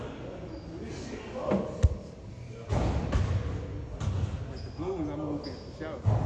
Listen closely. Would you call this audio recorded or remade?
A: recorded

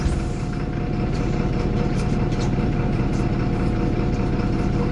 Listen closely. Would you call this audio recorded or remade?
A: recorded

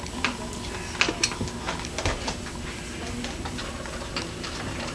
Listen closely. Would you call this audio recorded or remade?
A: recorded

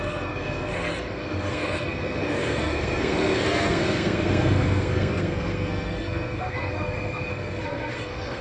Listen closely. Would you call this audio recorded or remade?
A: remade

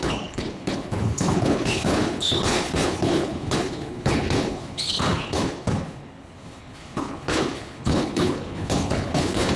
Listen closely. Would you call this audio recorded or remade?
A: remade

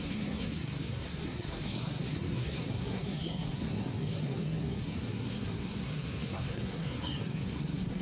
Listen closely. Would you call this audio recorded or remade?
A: remade